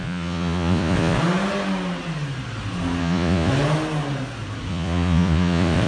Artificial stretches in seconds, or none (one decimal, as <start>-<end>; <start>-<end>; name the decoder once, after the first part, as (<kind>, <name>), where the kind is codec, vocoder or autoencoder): 0.0-1.2 (vocoder, Vocos); 3.0-3.5; 4.7-5.9